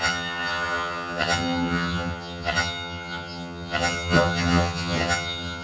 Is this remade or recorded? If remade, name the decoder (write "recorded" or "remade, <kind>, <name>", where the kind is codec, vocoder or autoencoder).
remade, vocoder, HiFi-GAN